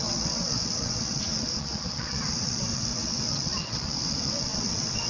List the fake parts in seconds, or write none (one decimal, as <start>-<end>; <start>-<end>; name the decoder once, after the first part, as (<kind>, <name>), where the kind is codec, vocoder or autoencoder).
0.0-5.1 (vocoder, WaveNeXt)